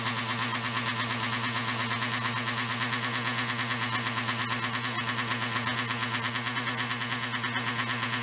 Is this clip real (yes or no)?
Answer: yes